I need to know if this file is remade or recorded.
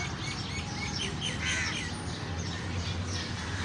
recorded